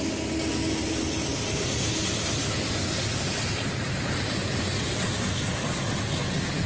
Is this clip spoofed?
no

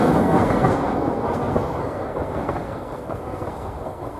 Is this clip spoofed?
yes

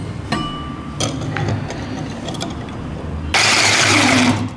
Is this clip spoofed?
no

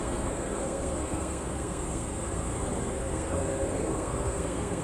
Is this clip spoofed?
yes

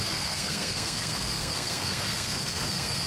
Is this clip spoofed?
yes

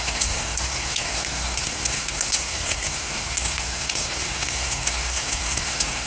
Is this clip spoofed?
yes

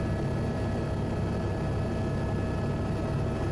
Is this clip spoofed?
no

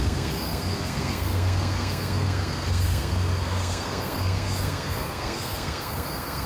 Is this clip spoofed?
yes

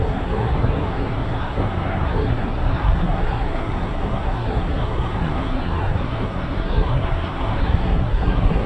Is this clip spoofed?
yes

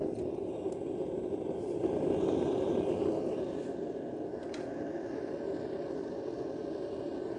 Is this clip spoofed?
no